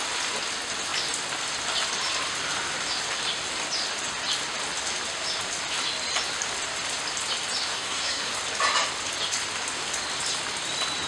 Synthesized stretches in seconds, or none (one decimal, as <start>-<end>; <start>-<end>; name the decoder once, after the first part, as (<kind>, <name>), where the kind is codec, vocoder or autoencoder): 7.7-8.3 (codec, SNAC)